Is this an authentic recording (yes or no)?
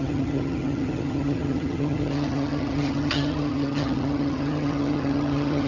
no